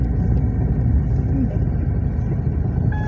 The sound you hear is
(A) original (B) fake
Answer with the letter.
A